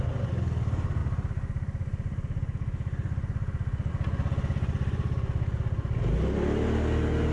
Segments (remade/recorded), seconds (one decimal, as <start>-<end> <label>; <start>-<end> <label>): 0.0-1.0 recorded; 1.0-3.9 remade; 3.9-7.3 recorded